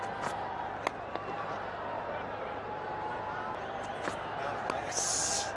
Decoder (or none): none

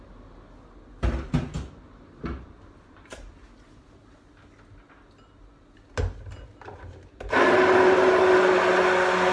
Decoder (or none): none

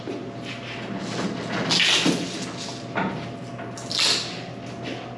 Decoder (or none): none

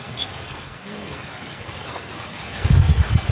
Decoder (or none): codec, SNAC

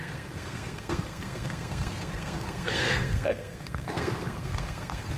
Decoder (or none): codec, SNAC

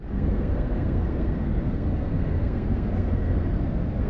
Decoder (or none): codec, SNAC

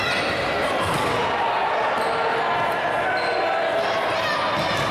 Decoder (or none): none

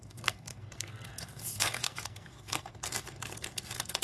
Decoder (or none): codec, SNAC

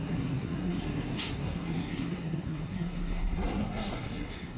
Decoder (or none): codec, SNAC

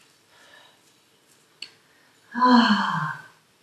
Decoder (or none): none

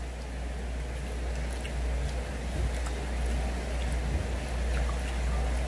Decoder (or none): none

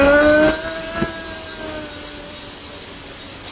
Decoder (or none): none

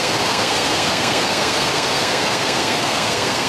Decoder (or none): codec, SNAC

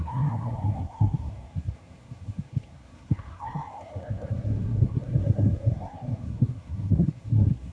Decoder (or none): codec, SNAC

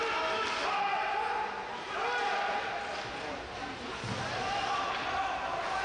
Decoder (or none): none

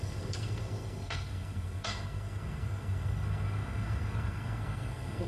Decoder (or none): codec, SNAC